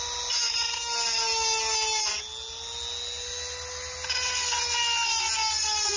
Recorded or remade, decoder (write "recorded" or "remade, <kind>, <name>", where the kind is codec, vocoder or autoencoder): recorded